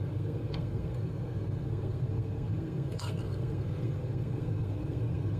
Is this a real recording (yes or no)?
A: no